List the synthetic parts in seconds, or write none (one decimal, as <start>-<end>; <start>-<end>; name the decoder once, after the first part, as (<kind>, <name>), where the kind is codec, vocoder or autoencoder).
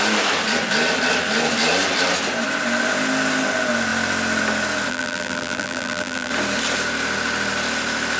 4.9-6.3 (vocoder, BigVGAN v2)